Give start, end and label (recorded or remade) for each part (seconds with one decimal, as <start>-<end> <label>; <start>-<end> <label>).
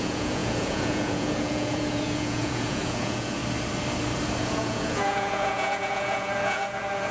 0.0-3.4 remade; 3.4-4.4 recorded; 4.4-7.1 remade